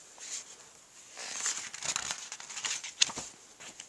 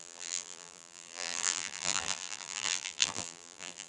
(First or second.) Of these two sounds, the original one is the first